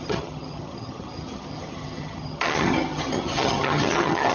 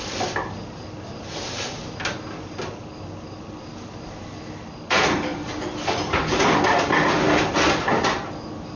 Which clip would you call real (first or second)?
second